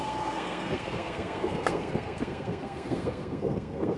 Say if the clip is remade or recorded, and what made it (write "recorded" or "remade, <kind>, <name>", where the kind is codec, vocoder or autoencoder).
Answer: remade, codec, SNAC